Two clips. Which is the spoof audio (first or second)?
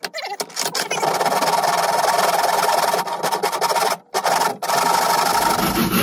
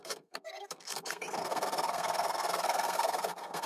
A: second